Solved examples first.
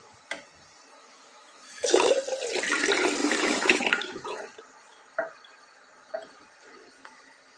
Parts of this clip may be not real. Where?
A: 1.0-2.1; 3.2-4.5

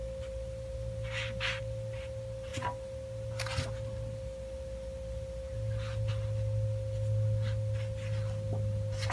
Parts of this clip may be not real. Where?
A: none

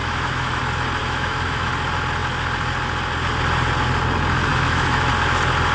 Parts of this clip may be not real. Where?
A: 0.0-0.6; 1.0-1.7; 4.5-5.1

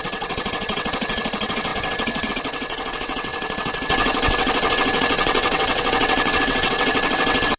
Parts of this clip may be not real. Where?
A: 0.0-7.6